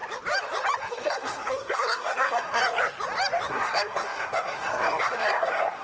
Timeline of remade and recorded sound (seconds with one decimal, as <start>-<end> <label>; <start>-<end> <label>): 0.0-0.8 recorded; 0.8-2.6 remade; 2.6-3.5 recorded; 3.5-5.8 remade